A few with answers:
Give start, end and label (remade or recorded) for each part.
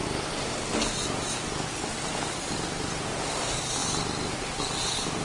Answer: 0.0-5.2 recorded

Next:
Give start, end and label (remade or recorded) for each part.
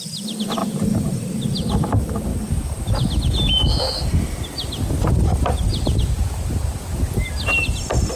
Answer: 0.0-0.6 recorded; 0.6-1.4 remade; 1.4-2.3 recorded; 2.3-2.9 remade; 2.9-5.7 recorded; 5.7-7.0 remade; 7.0-8.2 recorded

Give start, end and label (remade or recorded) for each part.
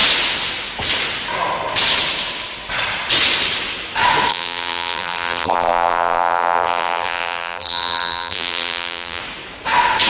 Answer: 0.0-4.3 recorded; 4.3-9.2 remade; 9.2-10.1 recorded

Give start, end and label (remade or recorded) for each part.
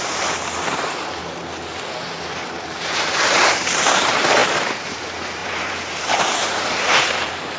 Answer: 0.0-1.2 remade; 1.2-2.6 recorded; 2.6-7.6 remade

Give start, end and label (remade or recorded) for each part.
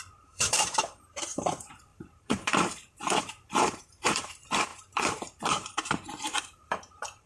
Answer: 0.0-7.3 remade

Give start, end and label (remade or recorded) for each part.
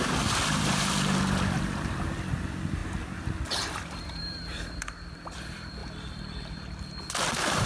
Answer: 0.0-2.8 remade; 2.8-3.6 recorded; 3.6-7.7 remade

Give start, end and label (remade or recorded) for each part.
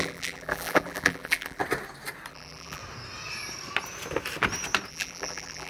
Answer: 0.0-1.6 remade; 1.6-2.3 recorded; 2.3-2.8 remade; 2.8-4.9 recorded; 4.9-5.7 remade